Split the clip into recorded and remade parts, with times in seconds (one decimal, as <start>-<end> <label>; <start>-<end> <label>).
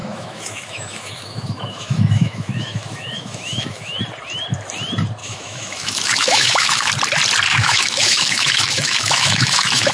0.0-4.0 remade; 4.0-5.2 recorded; 5.2-6.9 remade; 6.9-7.5 recorded; 7.5-9.9 remade